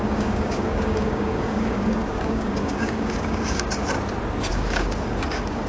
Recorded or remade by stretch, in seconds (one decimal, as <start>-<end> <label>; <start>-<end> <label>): 0.0-3.8 remade; 3.8-4.5 recorded; 4.5-5.7 remade